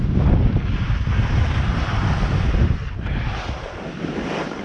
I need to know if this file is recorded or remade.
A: recorded